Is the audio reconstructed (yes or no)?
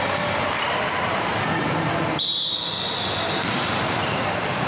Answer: yes